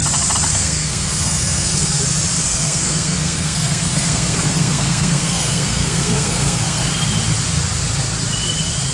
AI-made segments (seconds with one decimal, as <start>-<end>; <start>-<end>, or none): 0.5-2.0; 2.4-6.8